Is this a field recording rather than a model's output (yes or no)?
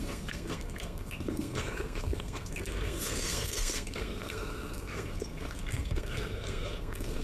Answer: no